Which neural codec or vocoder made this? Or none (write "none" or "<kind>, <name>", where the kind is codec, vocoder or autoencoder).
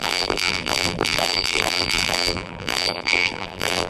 vocoder, BigVGAN v2